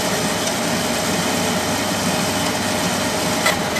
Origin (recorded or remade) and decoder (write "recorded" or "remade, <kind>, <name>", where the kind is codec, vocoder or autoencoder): recorded